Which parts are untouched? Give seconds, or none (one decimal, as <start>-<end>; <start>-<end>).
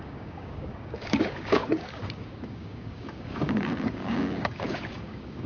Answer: none